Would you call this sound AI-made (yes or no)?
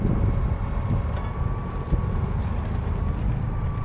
no